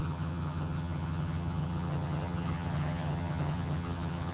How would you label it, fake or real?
fake